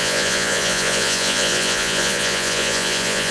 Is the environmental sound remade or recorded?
remade